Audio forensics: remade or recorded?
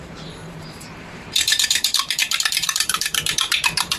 remade